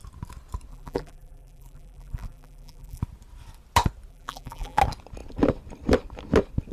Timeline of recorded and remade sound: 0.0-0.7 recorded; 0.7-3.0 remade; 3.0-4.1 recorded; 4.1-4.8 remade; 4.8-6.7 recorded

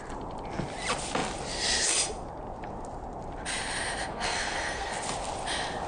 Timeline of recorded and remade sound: 0.0-4.1 recorded; 4.1-4.9 remade; 4.9-5.9 recorded

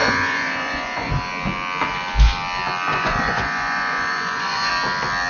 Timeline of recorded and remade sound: 0.0-1.1 remade; 1.1-2.9 recorded; 2.9-4.7 remade; 4.7-5.3 recorded

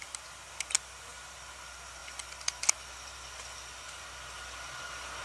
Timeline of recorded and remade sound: 0.0-5.2 recorded

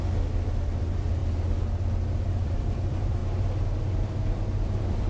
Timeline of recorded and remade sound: 0.0-1.2 remade; 1.2-2.3 recorded; 2.3-3.2 remade; 3.2-4.5 recorded; 4.5-5.1 remade